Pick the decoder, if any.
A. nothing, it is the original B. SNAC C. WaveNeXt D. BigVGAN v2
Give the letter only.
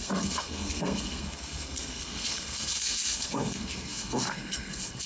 B